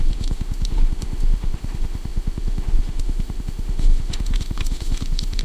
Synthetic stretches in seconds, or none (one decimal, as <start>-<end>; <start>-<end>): 0.0-5.4